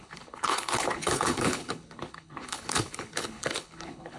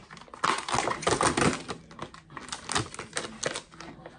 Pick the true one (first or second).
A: second